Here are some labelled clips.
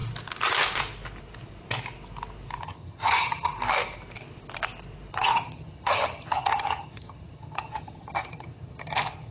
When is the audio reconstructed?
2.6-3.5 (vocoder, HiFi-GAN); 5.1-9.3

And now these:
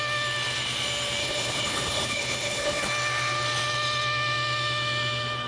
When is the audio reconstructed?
1.2-2.8 (codec, HILCodec)